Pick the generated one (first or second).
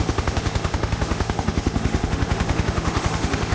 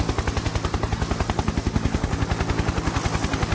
first